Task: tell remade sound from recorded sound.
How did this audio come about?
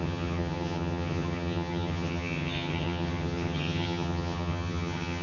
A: remade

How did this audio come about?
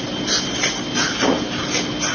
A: recorded